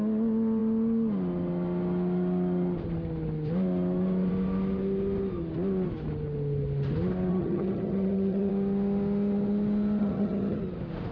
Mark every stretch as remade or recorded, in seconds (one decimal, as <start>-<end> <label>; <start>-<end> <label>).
0.0-7.3 recorded; 7.3-8.5 remade; 8.5-10.0 recorded; 10.0-10.6 remade; 10.6-11.1 recorded